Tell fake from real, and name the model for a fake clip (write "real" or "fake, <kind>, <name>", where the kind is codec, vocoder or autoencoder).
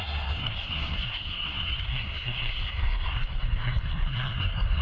fake, codec, SNAC